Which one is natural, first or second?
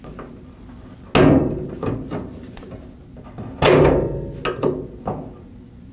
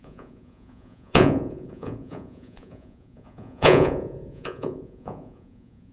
first